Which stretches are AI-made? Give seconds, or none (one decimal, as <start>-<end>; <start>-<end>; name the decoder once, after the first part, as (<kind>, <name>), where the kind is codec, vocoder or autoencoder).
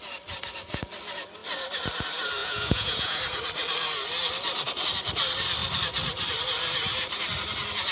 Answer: 2.4-3.2 (vocoder, Vocos)